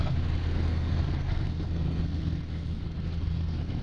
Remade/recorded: remade